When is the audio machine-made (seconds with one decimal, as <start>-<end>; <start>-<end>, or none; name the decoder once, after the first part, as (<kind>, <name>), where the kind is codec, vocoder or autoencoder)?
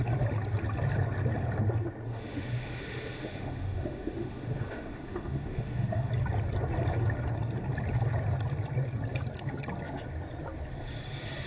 2.1-6.1 (autoencoder, DAC-VAE)